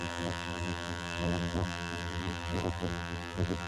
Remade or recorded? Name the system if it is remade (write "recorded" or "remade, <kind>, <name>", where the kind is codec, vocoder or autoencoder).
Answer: remade, vocoder, BigVGAN v2